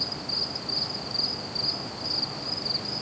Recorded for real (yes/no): yes